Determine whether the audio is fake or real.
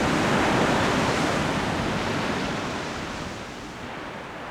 real